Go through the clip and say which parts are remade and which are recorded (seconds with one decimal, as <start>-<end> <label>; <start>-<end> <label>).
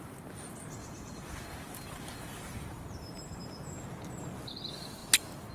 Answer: 0.0-0.8 recorded; 0.8-3.7 remade; 3.7-5.5 recorded